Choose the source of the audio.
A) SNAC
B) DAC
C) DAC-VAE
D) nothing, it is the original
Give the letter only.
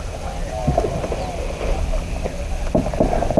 D